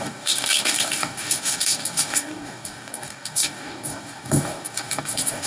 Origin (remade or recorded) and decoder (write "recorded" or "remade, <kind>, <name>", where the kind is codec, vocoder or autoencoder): remade, codec, DAC